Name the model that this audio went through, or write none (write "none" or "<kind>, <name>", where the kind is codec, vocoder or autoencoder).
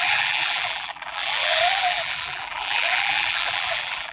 vocoder, BigVGAN v2